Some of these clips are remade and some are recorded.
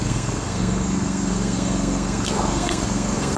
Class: remade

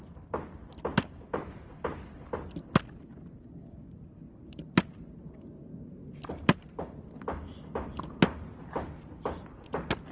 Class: recorded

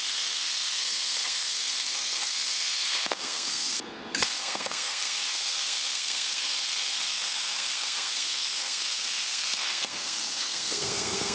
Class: remade